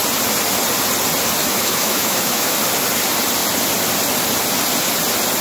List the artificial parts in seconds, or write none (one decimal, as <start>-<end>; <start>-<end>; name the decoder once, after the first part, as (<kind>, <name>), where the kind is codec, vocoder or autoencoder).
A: 1.4-2.6 (autoencoder, DAC-VAE)